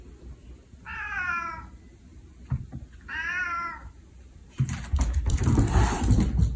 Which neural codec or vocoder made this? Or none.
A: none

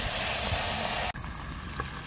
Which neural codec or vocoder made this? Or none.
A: none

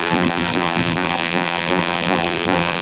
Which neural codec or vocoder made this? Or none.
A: vocoder, BigVGAN v2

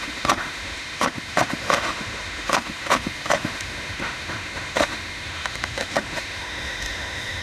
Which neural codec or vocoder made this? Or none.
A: autoencoder, DAC-VAE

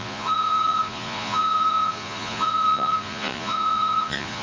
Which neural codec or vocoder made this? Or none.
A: vocoder, Vocos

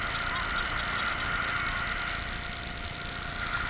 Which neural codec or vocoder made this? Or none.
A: none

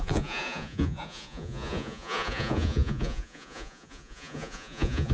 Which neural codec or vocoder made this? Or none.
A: vocoder, Vocos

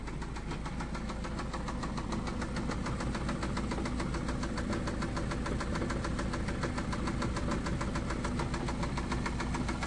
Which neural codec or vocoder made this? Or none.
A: none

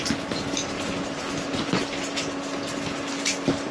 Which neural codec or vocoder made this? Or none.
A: none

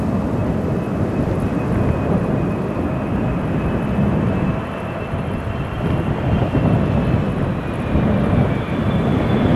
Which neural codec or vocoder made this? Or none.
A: vocoder, BigVGAN v2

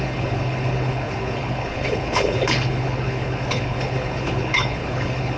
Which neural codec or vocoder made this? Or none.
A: codec, HILCodec